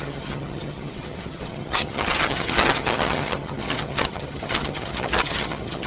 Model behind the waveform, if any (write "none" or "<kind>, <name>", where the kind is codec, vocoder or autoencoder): vocoder, HiFi-GAN